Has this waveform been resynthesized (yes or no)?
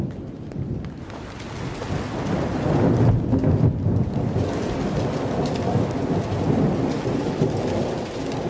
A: no